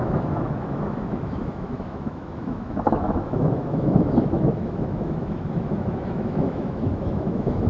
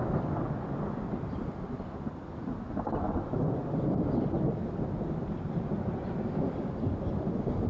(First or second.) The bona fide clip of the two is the second